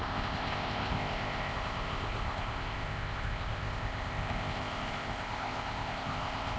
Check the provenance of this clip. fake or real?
fake